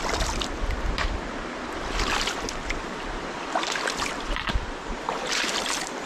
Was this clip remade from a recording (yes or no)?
yes